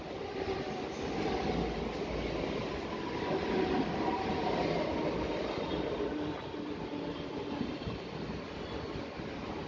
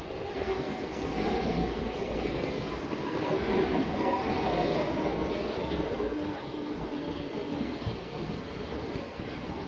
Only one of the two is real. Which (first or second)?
first